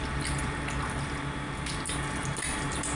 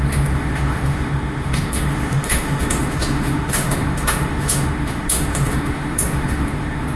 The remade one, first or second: second